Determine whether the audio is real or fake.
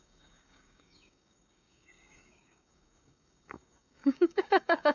fake